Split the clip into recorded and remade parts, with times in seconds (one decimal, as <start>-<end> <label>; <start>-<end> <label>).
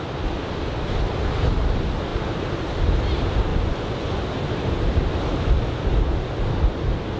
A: 0.0-3.5 recorded; 3.5-4.2 remade; 4.2-7.2 recorded